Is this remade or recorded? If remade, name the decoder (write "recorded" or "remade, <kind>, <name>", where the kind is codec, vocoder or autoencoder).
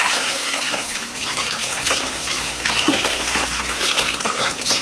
remade, codec, SNAC